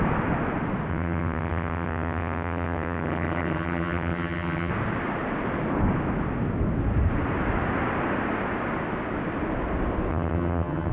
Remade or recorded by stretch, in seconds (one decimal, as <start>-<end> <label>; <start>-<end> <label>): 0.0-0.9 recorded; 0.9-4.7 remade; 4.7-10.1 recorded; 10.1-10.9 remade